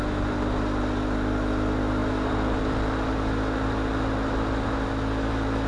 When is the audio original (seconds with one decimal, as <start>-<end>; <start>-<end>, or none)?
0.0-5.7